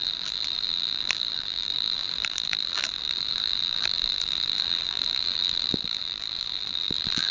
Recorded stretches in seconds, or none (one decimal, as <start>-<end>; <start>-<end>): none